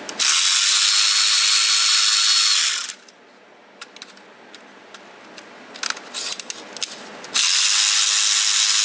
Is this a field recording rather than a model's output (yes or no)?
yes